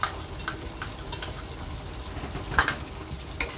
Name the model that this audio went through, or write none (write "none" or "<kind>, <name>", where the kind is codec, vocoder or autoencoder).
none